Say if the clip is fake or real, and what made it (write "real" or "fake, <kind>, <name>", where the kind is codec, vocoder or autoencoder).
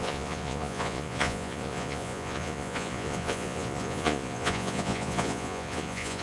fake, vocoder, Vocos